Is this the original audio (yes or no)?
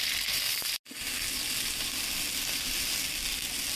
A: yes